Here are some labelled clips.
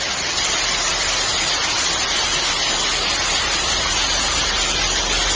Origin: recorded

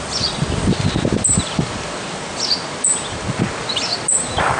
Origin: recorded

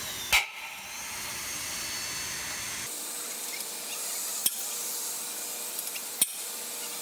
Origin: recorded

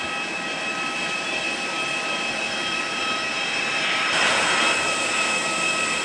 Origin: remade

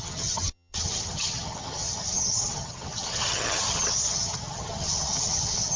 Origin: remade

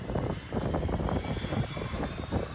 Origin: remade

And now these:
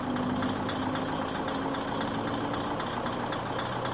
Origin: recorded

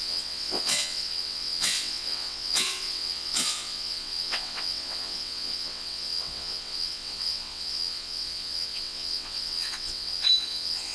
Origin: remade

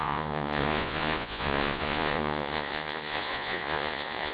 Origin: remade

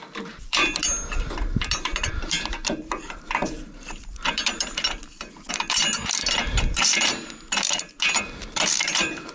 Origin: remade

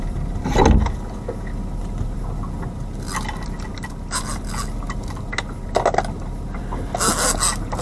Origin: recorded